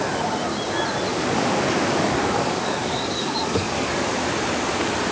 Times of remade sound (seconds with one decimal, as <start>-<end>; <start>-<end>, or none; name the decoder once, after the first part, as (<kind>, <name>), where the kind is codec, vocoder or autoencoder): 1.1-3.9 (codec, DAC)